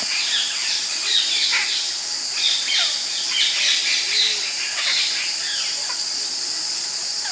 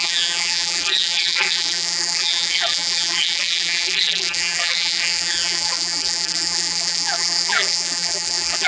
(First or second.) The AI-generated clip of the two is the second